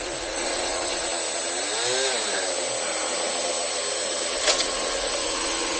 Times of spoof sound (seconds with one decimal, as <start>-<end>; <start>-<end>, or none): 0.0-1.1; 4.3-5.8